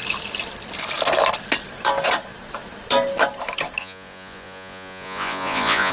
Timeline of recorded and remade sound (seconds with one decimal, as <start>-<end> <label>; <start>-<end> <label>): 0.0-3.8 recorded; 3.8-5.9 remade